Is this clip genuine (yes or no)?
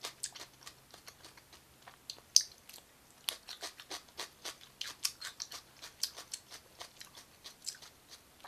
yes